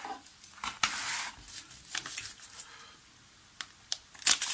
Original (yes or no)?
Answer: yes